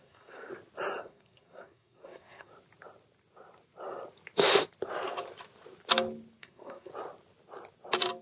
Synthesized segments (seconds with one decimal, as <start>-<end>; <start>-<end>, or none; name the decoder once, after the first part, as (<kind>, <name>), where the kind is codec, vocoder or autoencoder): 0.0-0.5 (codec, SNAC); 1.0-2.5; 6.4-6.9